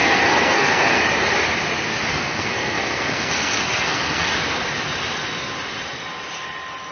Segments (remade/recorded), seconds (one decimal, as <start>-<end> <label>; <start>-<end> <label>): 0.0-1.0 remade; 1.0-2.1 recorded; 2.1-4.3 remade; 4.3-6.9 recorded